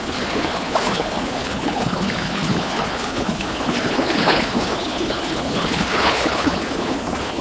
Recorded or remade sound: remade